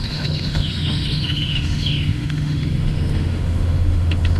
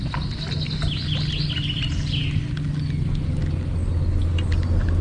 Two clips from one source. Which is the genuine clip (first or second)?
second